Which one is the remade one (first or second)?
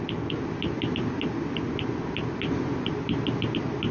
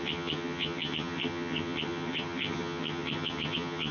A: second